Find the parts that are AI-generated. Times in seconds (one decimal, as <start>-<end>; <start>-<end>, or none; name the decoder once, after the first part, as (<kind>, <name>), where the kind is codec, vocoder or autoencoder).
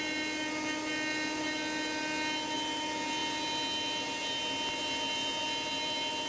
none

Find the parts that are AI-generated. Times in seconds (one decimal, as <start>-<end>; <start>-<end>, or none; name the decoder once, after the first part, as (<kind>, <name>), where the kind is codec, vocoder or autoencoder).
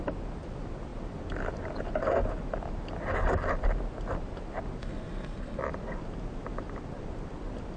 4.8-5.6 (codec, SNAC)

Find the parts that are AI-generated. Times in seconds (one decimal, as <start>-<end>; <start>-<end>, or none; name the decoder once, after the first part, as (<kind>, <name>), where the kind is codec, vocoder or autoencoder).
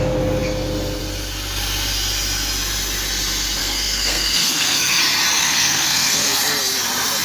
3.6-5.0 (codec, SNAC); 5.4-6.4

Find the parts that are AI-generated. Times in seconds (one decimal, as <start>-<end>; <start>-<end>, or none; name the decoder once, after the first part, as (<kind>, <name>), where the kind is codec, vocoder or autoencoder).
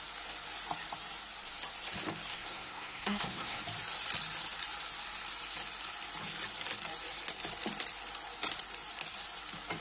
2.3-3.6 (codec, SNAC)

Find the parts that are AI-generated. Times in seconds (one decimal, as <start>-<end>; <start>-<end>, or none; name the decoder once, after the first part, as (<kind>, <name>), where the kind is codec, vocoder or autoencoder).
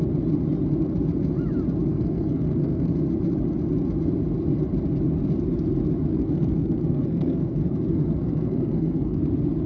1.9-2.9 (codec, SNAC); 6.1-9.2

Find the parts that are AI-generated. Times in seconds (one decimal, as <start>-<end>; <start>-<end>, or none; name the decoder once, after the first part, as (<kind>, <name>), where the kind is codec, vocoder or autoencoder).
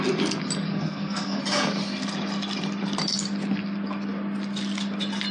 0.7-1.4 (codec, SNAC)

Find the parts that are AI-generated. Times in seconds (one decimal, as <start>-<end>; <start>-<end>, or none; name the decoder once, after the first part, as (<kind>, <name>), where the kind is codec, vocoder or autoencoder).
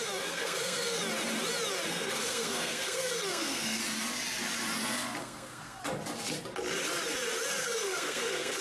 0.0-1.0 (codec, SNAC); 1.9-3.8; 5.2-5.8; 7.6-8.6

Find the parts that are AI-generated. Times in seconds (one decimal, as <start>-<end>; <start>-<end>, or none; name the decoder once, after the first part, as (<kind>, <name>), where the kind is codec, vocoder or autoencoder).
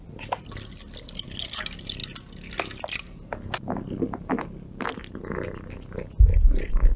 none